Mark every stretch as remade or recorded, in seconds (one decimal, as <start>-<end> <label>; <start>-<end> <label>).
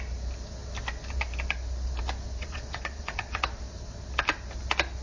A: 0.0-2.4 recorded; 2.4-3.5 remade; 3.5-5.0 recorded